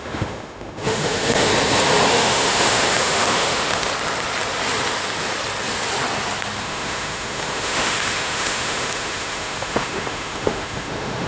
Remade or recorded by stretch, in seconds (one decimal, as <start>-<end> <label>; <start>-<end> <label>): 0.0-1.5 remade; 1.5-2.1 recorded; 2.1-3.9 remade; 3.9-6.6 recorded; 6.6-11.3 remade